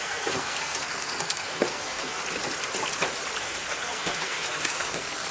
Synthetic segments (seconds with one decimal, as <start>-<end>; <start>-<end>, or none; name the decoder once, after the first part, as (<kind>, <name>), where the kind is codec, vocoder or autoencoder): 0.0-2.2 (codec, SNAC); 3.4-5.3